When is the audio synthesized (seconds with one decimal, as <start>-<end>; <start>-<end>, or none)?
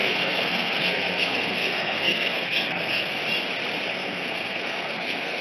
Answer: 0.0-3.2; 3.9-5.4